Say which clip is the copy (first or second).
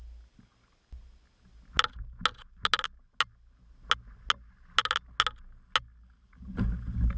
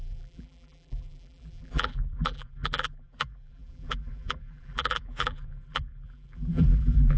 second